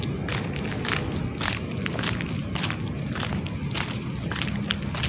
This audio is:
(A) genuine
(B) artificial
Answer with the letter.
A